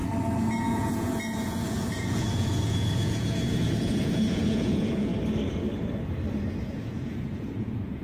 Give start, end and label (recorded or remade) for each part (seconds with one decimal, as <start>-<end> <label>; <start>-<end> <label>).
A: 0.0-0.7 recorded; 0.7-5.1 remade; 5.1-6.6 recorded; 6.6-8.0 remade